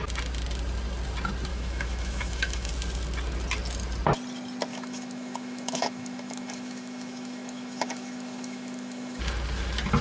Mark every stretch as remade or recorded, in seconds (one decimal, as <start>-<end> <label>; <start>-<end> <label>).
0.0-1.5 recorded; 1.5-2.7 remade; 2.7-4.7 recorded; 4.7-9.2 remade; 9.2-10.0 recorded